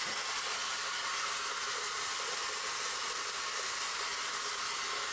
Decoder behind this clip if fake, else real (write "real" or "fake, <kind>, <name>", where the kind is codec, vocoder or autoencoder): real